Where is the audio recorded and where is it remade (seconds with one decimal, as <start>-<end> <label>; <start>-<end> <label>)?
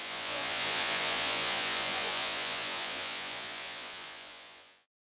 0.0-5.1 remade